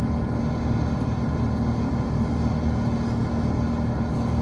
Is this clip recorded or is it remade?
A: recorded